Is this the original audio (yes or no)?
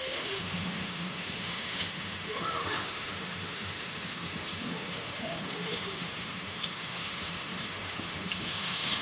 no